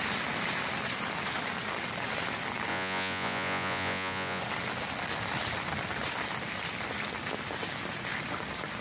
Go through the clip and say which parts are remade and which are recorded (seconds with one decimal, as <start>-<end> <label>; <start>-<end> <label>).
0.0-2.7 recorded; 2.7-4.4 remade; 4.4-8.8 recorded